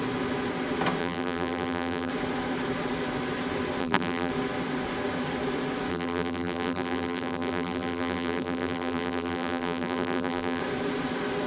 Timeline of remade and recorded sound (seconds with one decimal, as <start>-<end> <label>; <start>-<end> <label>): 0.0-1.0 recorded; 1.0-2.1 remade; 2.1-3.8 recorded; 3.8-4.3 remade; 4.3-5.9 recorded; 5.9-10.6 remade; 10.6-11.5 recorded